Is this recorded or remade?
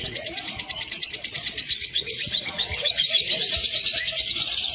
remade